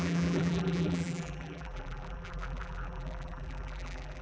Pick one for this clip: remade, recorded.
remade